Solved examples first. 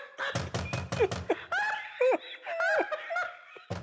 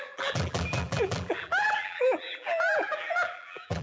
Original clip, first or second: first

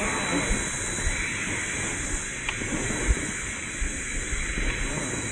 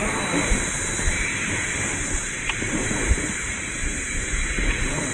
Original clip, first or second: first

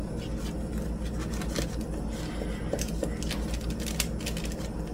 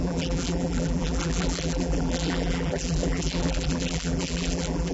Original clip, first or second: first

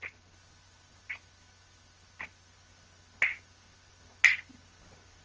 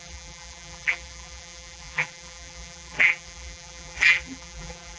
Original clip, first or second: first